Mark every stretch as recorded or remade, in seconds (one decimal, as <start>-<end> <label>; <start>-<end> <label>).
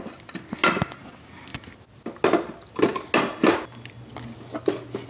0.0-5.1 recorded